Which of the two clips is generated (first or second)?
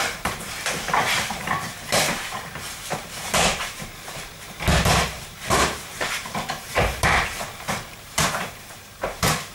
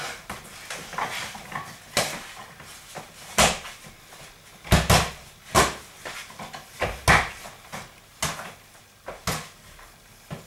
first